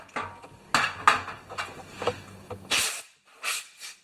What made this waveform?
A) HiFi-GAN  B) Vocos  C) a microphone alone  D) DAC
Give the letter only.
C